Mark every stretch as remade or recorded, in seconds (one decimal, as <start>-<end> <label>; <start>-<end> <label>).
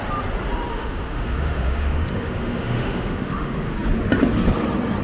0.0-0.7 recorded; 0.7-3.7 remade; 3.7-5.0 recorded